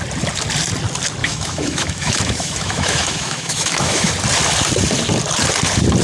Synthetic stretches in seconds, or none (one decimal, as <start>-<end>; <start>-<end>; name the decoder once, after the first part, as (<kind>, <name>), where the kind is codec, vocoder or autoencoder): 1.2-4.1 (autoencoder, DAC-VAE)